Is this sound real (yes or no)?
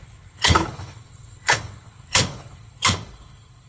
no